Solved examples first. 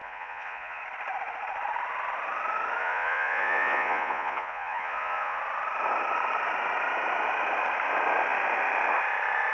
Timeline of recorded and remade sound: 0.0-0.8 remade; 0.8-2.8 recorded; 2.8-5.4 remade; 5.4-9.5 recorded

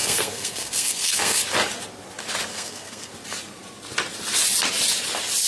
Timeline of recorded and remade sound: 0.0-1.4 remade; 1.4-2.5 recorded; 2.5-3.1 remade; 3.1-5.5 recorded

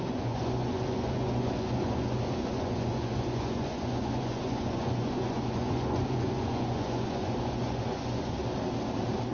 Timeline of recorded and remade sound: 0.0-8.4 remade; 8.4-9.3 recorded